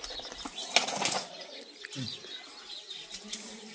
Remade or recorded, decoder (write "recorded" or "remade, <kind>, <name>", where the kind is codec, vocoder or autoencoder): recorded